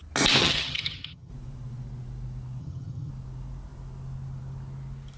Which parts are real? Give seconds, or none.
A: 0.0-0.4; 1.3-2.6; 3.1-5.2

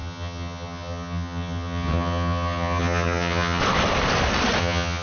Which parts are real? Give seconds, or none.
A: 3.6-4.6